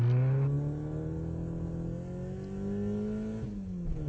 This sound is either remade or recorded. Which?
recorded